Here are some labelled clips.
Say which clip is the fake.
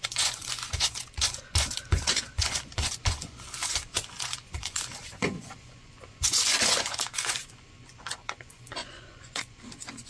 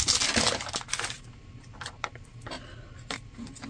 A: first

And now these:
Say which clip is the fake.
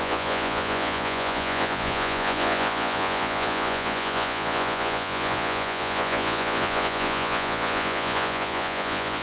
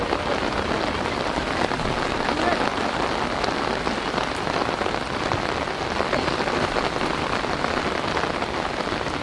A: first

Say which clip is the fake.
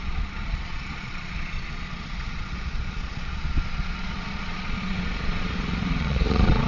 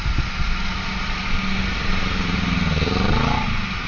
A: first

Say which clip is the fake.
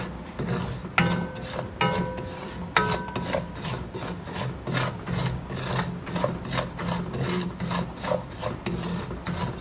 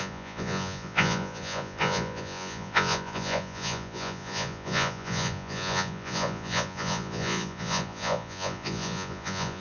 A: second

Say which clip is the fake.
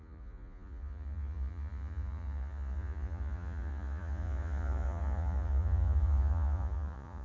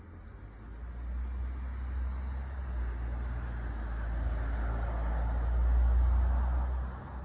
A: first